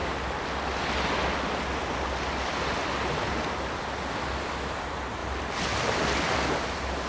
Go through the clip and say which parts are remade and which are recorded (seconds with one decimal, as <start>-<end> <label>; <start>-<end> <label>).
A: 0.0-7.1 recorded